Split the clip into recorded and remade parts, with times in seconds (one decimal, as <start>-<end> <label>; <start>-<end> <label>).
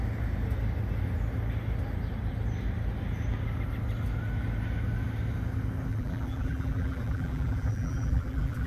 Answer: 0.0-5.9 recorded; 5.9-8.7 remade